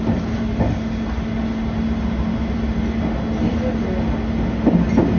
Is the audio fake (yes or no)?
no